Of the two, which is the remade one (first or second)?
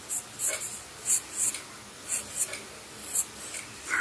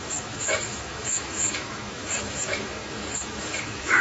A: second